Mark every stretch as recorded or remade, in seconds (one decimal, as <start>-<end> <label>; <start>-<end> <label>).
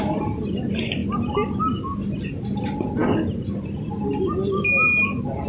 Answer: 0.0-5.5 recorded